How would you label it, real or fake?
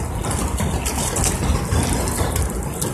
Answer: real